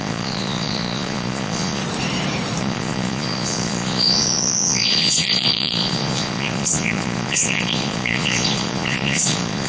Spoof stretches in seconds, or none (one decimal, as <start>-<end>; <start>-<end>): 0.0-1.8; 2.6-9.7